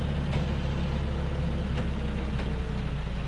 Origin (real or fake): real